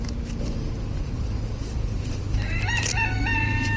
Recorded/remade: remade